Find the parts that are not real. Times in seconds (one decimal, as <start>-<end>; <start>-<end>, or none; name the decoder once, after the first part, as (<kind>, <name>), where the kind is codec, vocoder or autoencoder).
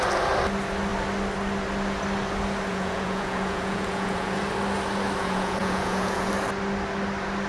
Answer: 2.7-4.4 (vocoder, Vocos); 5.2-6.3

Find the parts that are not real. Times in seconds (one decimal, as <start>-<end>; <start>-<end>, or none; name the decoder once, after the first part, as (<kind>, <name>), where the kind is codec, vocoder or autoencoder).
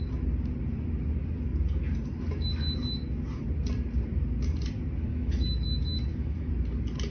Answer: 5.1-6.5 (autoencoder, DAC-VAE)